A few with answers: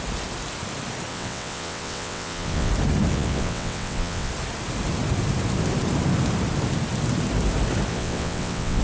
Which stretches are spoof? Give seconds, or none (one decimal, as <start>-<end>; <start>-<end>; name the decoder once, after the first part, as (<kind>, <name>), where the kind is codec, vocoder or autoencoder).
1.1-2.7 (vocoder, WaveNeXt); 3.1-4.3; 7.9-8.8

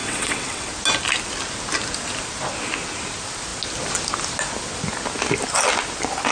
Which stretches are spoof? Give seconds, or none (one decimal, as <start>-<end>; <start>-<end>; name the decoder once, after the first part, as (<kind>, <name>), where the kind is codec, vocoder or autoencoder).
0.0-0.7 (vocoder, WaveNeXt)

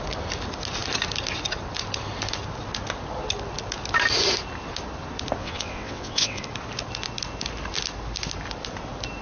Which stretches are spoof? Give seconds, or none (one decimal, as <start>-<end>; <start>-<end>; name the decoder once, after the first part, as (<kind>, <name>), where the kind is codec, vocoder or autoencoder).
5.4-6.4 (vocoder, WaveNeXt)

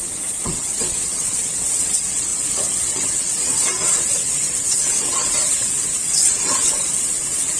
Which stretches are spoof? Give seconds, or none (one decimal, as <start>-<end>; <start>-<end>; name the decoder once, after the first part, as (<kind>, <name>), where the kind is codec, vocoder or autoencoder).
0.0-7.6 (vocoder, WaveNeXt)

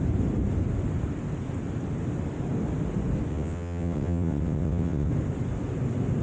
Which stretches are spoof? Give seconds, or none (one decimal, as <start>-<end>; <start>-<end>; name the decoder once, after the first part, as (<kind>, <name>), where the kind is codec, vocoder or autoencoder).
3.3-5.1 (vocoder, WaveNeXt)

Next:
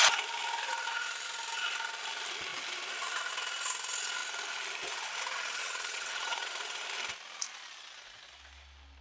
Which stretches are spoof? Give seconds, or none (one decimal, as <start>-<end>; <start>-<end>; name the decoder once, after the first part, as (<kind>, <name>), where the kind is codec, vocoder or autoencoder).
5.6-6.5 (vocoder, WaveNeXt)

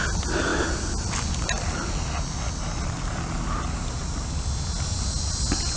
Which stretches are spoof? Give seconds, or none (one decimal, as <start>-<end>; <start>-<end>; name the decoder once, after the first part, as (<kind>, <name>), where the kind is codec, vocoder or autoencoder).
none